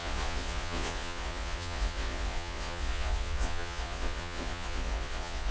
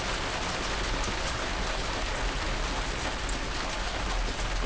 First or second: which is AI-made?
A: first